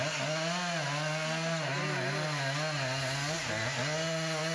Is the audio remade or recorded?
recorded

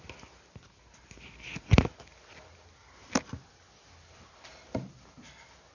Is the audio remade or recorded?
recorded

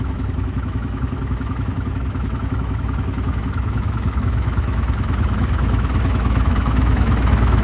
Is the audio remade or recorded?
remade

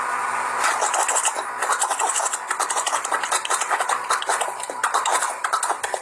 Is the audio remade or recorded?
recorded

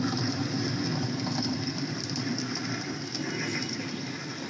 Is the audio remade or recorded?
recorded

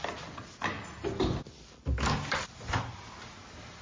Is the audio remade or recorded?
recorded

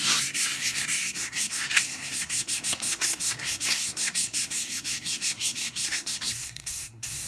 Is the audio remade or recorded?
remade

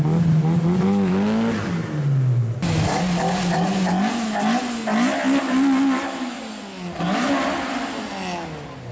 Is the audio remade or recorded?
recorded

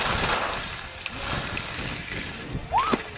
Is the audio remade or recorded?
recorded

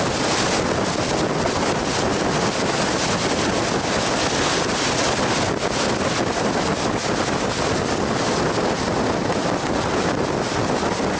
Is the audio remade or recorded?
recorded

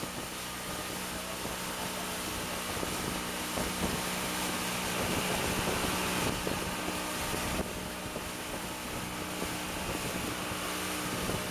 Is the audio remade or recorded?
recorded